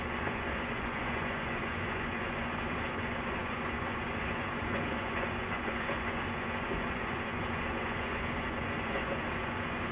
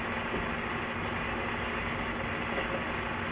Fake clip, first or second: first